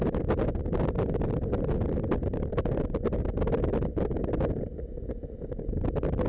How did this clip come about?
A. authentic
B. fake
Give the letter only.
A